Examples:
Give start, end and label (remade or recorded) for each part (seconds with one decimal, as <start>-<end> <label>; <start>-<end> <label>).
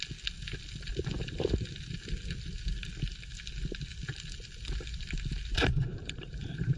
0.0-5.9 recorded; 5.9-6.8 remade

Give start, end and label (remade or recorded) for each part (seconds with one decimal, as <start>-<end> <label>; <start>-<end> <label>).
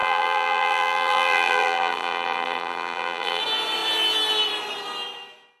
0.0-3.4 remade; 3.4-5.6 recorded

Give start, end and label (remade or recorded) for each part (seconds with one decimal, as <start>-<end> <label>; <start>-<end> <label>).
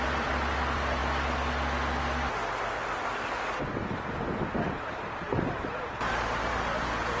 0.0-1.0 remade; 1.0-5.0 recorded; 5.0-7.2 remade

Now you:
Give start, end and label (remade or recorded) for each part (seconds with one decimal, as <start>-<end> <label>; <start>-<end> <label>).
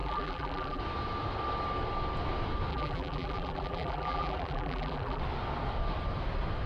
0.0-0.8 remade; 0.8-2.7 recorded; 2.7-5.2 remade; 5.2-6.7 recorded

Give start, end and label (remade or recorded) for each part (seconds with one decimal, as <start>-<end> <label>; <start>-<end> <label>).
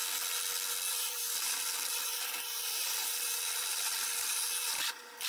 0.0-0.9 recorded; 0.9-5.3 remade